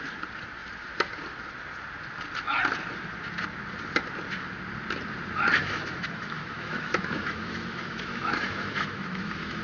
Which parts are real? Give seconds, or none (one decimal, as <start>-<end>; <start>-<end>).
0.0-5.6